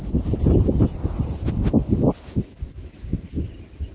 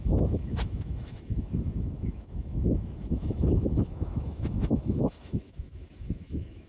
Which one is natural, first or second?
first